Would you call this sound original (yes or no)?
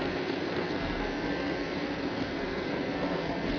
no